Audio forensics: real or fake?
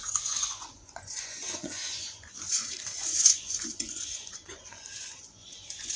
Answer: fake